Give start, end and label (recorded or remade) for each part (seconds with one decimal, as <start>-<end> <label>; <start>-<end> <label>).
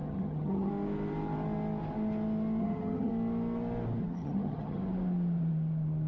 0.0-0.7 remade; 0.7-2.6 recorded; 2.6-3.1 remade; 3.1-4.0 recorded; 4.0-4.8 remade; 4.8-6.1 recorded